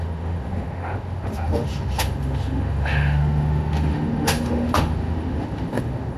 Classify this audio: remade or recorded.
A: remade